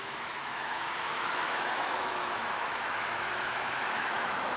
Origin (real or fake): fake